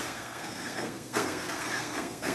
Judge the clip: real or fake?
fake